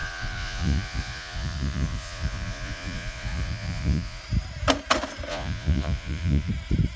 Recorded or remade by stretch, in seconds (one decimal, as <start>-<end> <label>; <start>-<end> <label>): 0.0-4.2 remade; 4.2-5.3 recorded; 5.3-6.5 remade; 6.5-7.0 recorded